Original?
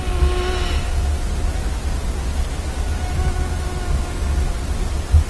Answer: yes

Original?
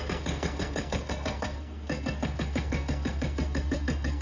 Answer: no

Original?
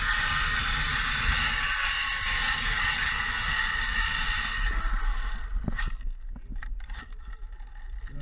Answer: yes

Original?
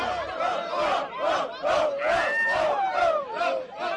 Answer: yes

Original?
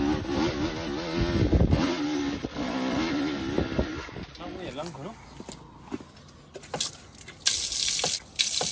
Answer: yes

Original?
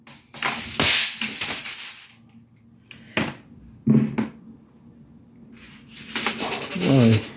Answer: yes